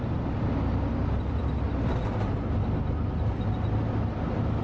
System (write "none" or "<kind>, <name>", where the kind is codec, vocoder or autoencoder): none